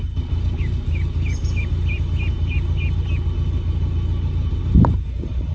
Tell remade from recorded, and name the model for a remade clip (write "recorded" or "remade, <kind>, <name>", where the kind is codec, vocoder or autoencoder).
recorded